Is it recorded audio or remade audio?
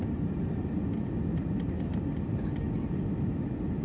recorded